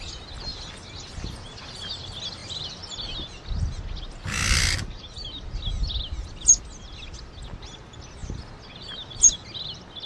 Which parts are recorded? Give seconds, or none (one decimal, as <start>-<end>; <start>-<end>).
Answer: 0.0-10.1